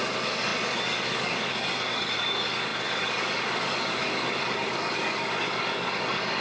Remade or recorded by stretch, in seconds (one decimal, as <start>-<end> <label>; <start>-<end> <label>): 0.0-6.4 remade